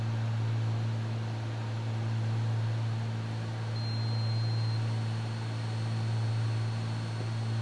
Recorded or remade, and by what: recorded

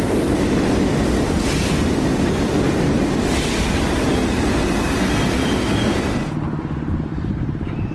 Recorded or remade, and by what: recorded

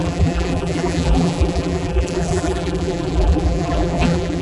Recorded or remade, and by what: remade, vocoder, BigVGAN v2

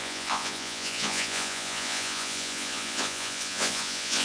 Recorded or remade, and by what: remade, vocoder, Vocos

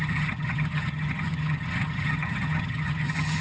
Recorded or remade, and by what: remade, vocoder, HiFi-GAN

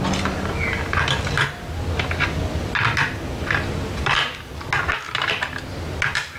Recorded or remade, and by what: recorded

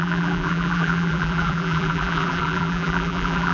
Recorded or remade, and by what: remade, vocoder, BigVGAN v2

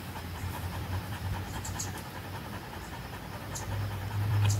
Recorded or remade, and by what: remade, vocoder, BigVGAN v2